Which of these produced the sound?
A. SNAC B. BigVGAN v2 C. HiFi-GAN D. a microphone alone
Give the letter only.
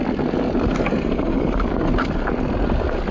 D